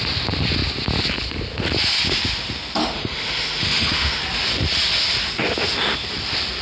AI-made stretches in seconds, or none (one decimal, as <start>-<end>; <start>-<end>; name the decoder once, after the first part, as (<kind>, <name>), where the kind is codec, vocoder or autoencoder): 2.8-4.2 (autoencoder, DAC-VAE)